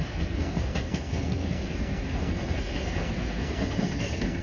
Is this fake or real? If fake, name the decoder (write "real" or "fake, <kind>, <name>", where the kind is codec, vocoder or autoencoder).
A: fake, codec, SNAC